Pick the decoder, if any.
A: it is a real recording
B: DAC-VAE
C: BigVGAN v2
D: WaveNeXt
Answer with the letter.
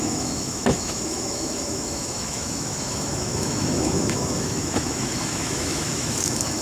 B